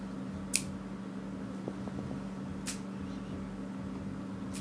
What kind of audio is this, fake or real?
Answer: real